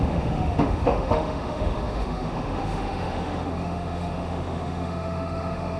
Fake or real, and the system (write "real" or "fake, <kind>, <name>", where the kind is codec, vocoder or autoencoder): fake, autoencoder, DAC-VAE